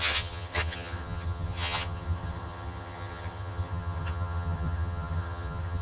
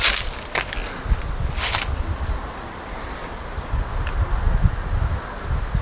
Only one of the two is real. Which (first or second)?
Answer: second